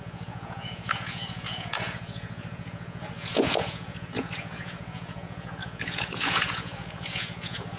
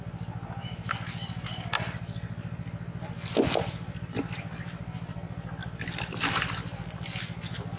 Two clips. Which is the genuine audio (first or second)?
second